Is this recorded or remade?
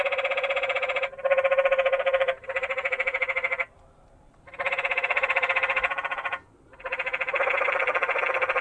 remade